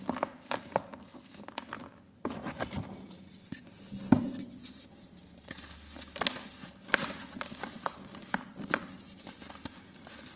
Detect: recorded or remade recorded